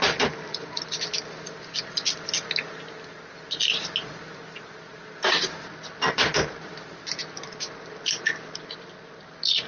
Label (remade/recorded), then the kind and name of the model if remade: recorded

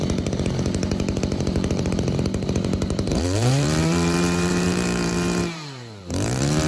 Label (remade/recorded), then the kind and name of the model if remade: remade, vocoder, BigVGAN v2